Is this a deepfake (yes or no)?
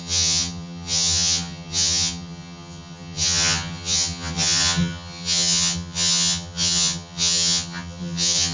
yes